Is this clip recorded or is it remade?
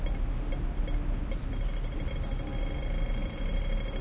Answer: recorded